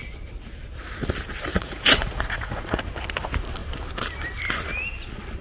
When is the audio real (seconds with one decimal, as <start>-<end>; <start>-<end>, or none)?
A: 0.0-1.5; 2.8-5.4